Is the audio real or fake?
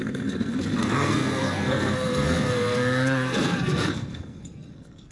fake